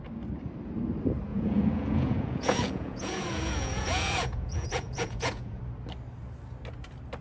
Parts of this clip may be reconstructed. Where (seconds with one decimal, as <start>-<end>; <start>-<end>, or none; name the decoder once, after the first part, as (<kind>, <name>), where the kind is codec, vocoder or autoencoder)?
1.3-5.6 (vocoder, Vocos)